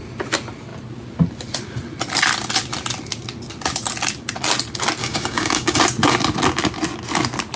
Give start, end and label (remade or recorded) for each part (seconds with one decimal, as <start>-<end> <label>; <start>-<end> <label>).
0.0-5.0 recorded; 5.0-5.8 remade; 5.8-7.6 recorded